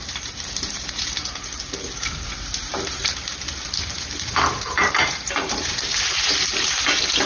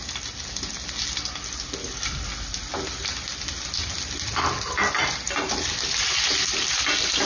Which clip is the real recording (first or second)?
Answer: second